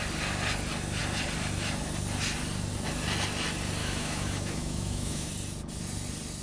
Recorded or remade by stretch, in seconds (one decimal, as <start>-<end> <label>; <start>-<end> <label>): 0.0-3.8 recorded; 3.8-5.3 remade; 5.3-6.4 recorded

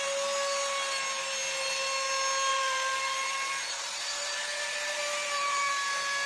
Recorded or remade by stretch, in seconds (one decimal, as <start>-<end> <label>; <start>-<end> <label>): 0.0-2.5 recorded; 2.5-3.5 remade; 3.5-4.1 recorded; 4.1-5.7 remade; 5.7-6.3 recorded

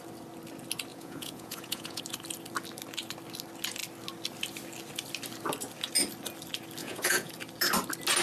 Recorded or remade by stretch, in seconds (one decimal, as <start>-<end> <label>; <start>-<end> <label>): 0.0-0.9 recorded; 0.9-2.0 remade; 2.0-6.8 recorded; 6.8-7.3 remade; 7.3-8.2 recorded

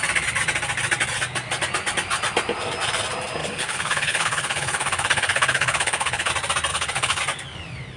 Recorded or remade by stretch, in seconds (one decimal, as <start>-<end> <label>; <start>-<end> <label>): 0.0-3.4 recorded; 3.4-6.3 remade; 6.3-6.7 recorded; 6.7-7.2 remade; 7.2-8.0 recorded

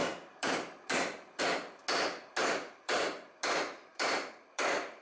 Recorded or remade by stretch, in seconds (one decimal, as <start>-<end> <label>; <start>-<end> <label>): 0.0-1.4 remade; 1.4-2.4 recorded; 2.4-3.3 remade; 3.3-3.9 recorded; 3.9-5.0 remade

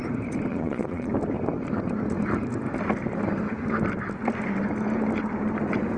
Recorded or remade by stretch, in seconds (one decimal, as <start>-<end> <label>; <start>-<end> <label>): 0.0-0.5 recorded; 0.5-1.1 remade; 1.1-6.0 recorded

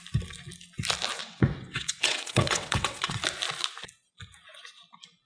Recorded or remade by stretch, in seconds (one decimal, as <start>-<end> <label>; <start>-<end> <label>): 0.0-1.2 recorded; 1.2-3.2 remade; 3.2-5.3 recorded

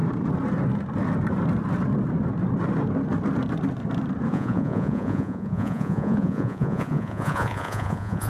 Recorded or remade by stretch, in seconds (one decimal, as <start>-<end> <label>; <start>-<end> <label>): 0.0-4.3 recorded; 4.3-8.3 remade